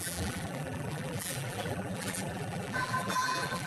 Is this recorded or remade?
remade